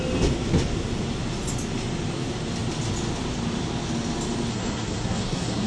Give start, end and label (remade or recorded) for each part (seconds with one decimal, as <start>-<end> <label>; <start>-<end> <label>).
0.0-4.5 recorded; 4.5-5.7 remade